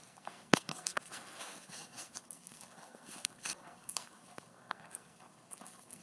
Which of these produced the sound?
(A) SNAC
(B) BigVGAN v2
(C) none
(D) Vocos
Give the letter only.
A